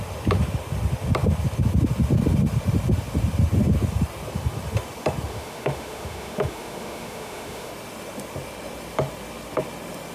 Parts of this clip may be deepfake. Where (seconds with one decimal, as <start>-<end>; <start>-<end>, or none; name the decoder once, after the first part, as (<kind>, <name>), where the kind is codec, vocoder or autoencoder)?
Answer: 5.3-7.7 (autoencoder, DAC-VAE)